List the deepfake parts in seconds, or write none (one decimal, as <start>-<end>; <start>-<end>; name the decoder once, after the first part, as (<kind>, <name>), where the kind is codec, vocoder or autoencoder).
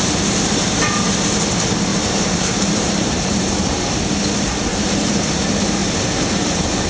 1.9-3.9 (vocoder, BigVGAN v2); 4.7-5.2